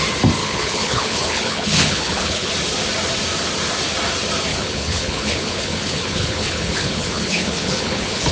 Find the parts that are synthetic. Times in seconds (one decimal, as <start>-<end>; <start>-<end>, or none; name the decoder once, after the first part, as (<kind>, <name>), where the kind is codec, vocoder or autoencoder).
0.4-2.5 (codec, HILCodec); 4.5-8.3